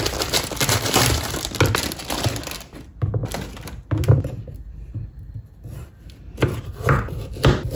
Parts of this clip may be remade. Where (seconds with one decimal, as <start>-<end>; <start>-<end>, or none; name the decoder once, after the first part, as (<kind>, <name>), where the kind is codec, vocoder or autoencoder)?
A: 0.0-3.2 (vocoder, BigVGAN v2); 6.6-7.8

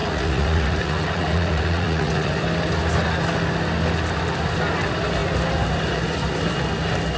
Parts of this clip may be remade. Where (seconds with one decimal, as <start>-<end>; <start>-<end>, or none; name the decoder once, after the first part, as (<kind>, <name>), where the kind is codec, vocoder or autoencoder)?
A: 0.0-2.4 (vocoder, Vocos)

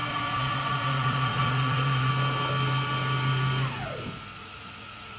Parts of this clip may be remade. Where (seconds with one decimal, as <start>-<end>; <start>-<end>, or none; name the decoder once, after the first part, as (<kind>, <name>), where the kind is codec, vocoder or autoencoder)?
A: 0.0-2.1 (vocoder, Vocos); 4.4-5.2

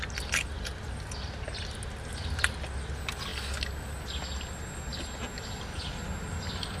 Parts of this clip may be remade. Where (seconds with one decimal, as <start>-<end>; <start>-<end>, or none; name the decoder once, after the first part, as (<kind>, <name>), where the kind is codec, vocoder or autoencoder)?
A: none

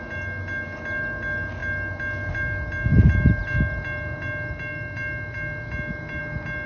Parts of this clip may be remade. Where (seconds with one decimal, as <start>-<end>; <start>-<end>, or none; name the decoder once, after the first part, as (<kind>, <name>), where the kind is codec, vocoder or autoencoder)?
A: none

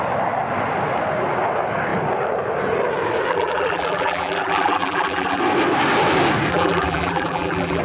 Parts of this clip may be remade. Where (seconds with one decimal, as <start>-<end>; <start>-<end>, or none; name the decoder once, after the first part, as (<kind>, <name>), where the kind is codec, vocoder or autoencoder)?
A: 3.3-5.4 (vocoder, BigVGAN v2); 6.5-7.8

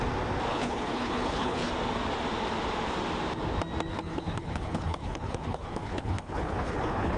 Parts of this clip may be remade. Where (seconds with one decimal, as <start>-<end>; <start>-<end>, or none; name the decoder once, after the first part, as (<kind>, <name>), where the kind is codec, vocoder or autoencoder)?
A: 0.5-1.7 (codec, HILCodec); 3.9-7.2

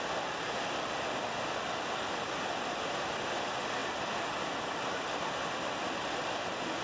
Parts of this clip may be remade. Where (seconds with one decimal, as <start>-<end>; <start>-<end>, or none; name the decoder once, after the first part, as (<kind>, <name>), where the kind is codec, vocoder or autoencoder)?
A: none